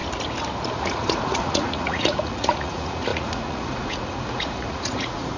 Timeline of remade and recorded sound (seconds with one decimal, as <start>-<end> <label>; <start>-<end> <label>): 0.0-0.7 recorded; 0.7-5.4 remade